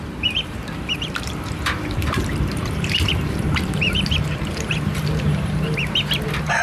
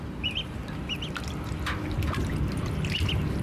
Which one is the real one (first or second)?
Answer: second